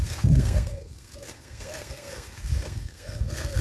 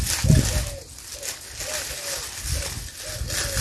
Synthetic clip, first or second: first